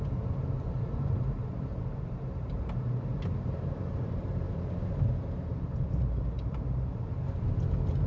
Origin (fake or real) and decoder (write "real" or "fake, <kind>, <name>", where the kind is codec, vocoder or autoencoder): fake, vocoder, BigVGAN v2